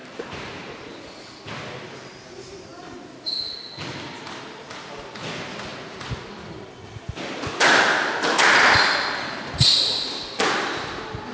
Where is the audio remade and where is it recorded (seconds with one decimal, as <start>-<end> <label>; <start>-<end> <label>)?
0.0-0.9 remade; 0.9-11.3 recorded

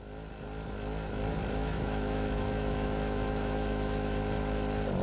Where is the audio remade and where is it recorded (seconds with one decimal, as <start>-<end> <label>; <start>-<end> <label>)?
0.0-1.6 recorded; 1.6-4.2 remade; 4.2-5.0 recorded

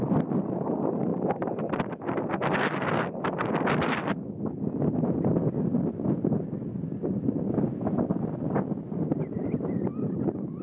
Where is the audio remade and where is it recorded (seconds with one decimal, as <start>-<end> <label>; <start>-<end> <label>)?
0.0-1.1 recorded; 1.1-1.6 remade; 1.6-10.6 recorded

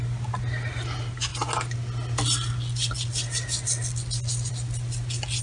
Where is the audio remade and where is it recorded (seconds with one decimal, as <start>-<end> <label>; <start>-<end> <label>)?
0.0-5.4 recorded

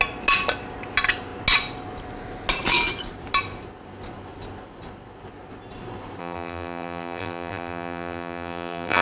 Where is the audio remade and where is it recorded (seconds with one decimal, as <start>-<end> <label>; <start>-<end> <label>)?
0.0-6.2 recorded; 6.2-9.0 remade

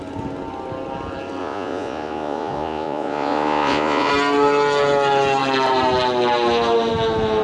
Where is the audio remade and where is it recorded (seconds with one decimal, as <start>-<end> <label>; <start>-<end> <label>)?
0.0-1.4 recorded; 1.4-4.1 remade; 4.1-7.4 recorded

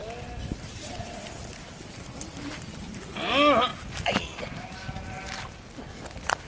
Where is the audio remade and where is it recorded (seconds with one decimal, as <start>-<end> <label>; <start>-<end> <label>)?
0.0-6.5 recorded